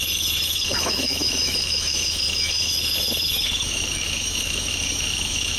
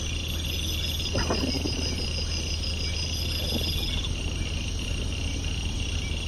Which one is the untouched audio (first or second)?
second